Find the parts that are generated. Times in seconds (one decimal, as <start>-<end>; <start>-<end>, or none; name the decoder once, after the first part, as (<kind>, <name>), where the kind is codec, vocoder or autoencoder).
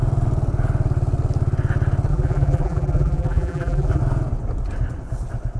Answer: 2.1-4.0 (vocoder, BigVGAN v2)